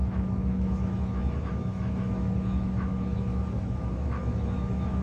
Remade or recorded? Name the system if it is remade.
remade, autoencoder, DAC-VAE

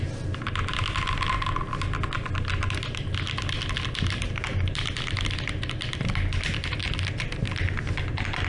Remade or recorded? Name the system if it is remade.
recorded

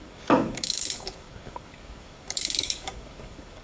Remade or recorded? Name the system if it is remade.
remade, codec, DAC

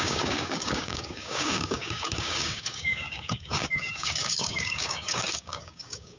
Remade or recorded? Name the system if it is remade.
remade, codec, DAC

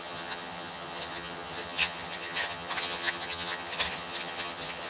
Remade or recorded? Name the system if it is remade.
remade, vocoder, HiFi-GAN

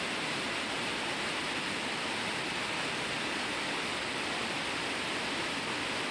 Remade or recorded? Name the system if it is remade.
recorded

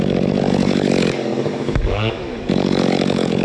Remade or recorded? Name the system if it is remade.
remade, codec, DAC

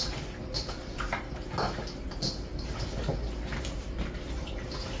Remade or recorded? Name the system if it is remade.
recorded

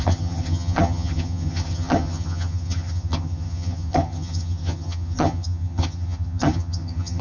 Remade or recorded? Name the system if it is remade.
remade, vocoder, HiFi-GAN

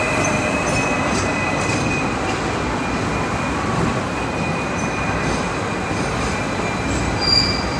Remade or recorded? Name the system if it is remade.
recorded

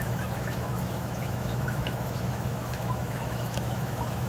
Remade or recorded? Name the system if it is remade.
remade, autoencoder, DAC-VAE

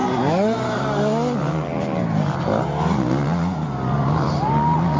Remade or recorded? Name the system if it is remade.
recorded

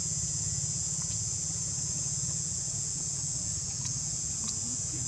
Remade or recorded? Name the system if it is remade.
remade, vocoder, Vocos